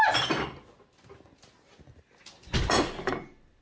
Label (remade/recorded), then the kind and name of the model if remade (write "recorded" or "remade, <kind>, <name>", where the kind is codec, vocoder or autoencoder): recorded